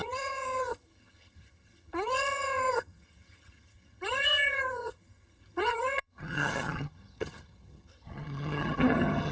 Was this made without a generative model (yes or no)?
no